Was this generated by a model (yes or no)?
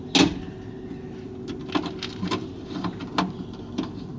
no